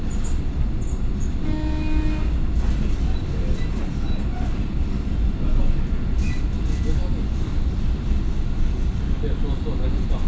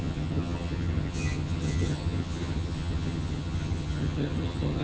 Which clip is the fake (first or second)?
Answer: second